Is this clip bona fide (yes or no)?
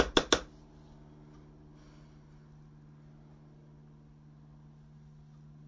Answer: yes